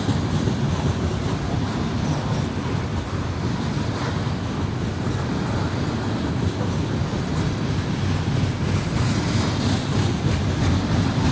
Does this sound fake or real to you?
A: real